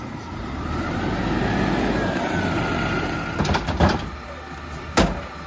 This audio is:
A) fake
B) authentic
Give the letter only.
B